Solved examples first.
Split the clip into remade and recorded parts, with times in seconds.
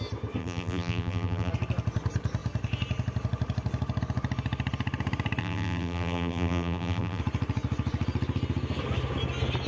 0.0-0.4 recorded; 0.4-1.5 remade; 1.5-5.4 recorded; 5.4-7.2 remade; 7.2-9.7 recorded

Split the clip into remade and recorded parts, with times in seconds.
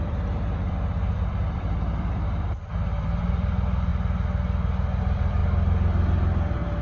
0.0-3.9 remade; 3.9-5.0 recorded; 5.0-5.4 remade; 5.4-6.8 recorded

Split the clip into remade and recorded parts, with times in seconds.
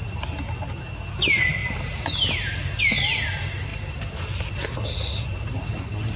0.0-1.6 recorded; 1.6-2.8 remade; 2.8-3.7 recorded; 3.7-4.5 remade; 4.5-6.2 recorded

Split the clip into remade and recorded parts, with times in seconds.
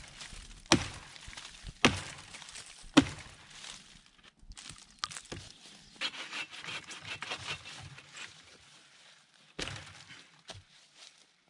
0.0-2.5 recorded; 2.5-3.3 remade; 3.3-6.1 recorded; 6.1-9.4 remade; 9.4-11.5 recorded